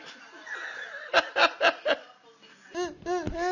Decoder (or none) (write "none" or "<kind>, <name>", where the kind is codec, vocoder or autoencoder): none